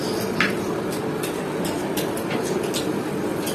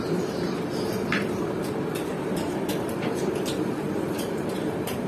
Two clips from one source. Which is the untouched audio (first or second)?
first